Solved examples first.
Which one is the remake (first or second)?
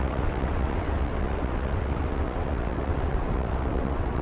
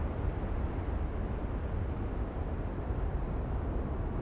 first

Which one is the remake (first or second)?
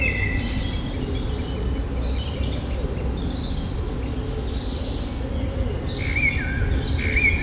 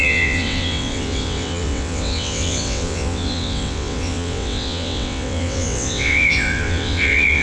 second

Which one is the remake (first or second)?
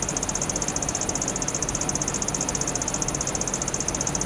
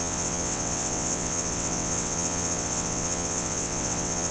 second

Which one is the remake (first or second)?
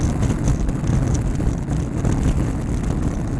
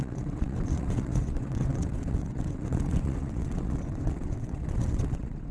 second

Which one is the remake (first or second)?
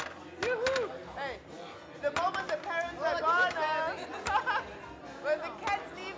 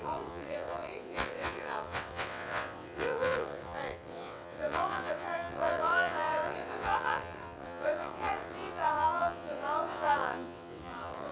second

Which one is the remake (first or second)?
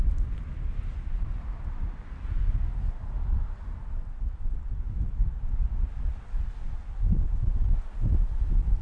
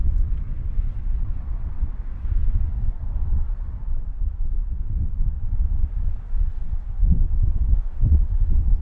second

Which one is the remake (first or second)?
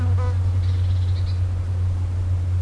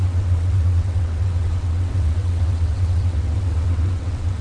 second